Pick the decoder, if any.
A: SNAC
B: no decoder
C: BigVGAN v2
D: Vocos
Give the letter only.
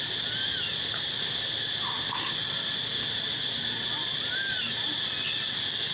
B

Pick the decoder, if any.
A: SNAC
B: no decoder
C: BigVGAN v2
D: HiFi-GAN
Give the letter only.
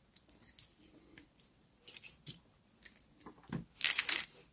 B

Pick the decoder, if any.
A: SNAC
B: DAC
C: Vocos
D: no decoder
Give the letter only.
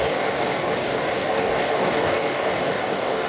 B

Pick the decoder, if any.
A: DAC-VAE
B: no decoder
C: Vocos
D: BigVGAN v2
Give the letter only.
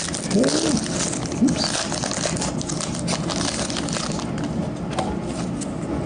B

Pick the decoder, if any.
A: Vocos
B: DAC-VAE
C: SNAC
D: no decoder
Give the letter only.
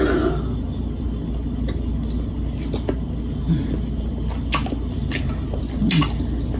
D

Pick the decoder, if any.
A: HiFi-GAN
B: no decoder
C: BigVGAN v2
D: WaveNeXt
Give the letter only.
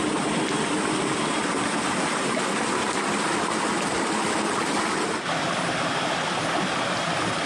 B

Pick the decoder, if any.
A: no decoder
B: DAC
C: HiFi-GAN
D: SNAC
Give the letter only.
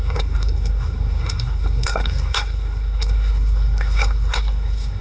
D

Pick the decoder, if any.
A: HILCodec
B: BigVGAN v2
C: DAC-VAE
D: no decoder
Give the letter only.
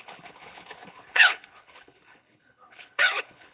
A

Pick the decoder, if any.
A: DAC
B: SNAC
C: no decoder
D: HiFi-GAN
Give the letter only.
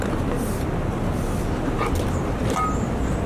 C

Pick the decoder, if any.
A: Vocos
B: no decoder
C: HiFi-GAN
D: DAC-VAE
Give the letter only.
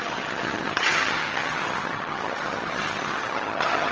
C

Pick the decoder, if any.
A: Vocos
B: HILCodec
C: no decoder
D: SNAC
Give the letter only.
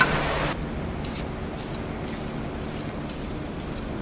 C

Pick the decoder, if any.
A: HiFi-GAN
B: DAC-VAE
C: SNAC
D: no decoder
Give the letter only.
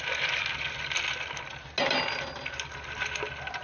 D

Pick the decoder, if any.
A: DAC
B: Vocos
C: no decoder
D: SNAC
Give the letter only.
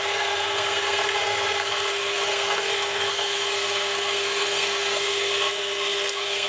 D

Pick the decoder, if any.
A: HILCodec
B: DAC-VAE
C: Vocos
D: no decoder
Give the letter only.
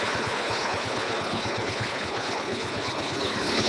A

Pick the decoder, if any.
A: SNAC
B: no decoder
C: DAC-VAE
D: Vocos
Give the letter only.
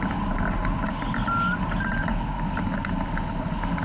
B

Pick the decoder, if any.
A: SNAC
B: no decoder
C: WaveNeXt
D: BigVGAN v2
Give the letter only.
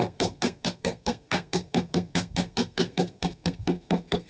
A